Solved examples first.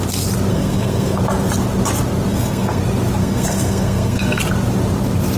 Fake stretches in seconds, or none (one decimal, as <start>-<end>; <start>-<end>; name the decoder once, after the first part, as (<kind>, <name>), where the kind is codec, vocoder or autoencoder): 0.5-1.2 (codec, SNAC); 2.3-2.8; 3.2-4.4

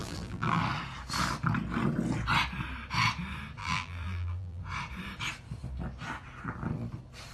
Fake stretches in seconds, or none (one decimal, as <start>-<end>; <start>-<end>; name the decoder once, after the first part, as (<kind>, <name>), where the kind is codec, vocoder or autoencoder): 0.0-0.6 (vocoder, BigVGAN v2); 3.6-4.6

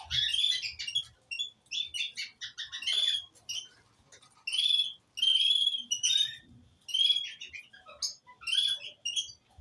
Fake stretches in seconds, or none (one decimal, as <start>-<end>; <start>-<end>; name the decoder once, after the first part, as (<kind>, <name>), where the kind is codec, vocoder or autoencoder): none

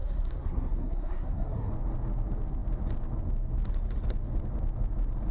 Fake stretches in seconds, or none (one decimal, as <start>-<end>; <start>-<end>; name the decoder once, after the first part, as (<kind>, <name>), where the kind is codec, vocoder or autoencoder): 0.0-1.7 (codec, SNAC)